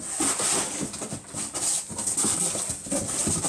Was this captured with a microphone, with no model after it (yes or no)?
yes